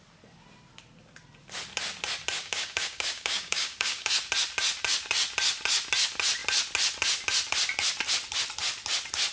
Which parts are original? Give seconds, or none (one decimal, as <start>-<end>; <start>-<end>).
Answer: 0.0-2.4; 4.1-9.3